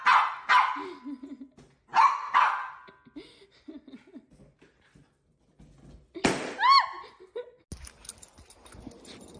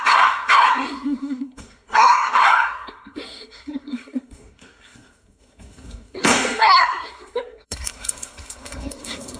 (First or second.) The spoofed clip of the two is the second